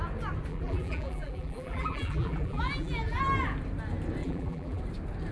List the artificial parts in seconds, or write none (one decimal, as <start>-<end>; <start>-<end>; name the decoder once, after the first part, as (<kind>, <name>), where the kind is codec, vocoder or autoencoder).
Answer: 0.5-3.2 (vocoder, BigVGAN v2); 4.2-4.8